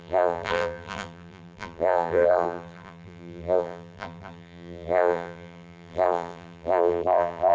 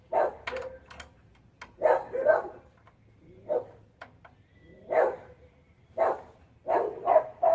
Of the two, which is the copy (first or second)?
first